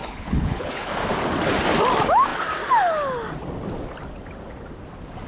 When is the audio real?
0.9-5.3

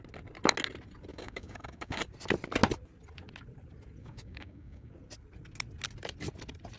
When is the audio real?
0.0-1.1; 2.0-4.0; 4.9-6.8

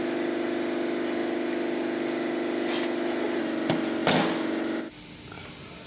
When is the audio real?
0.0-5.9